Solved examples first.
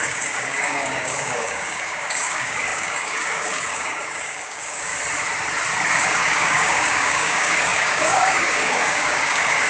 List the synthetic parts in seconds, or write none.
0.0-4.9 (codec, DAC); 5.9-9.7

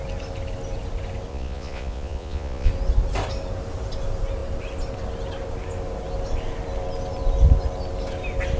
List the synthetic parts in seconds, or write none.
1.3-2.7 (vocoder, Vocos)

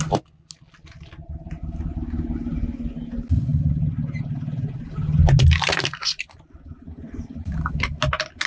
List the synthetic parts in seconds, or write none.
none

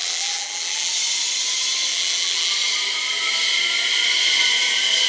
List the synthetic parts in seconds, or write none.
0.0-0.9 (vocoder, BigVGAN v2); 1.9-2.5

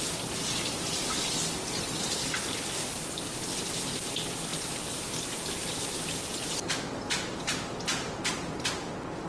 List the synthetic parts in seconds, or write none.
none